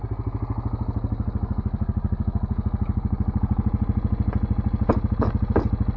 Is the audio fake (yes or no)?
no